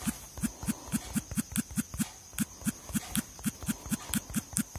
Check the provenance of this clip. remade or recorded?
recorded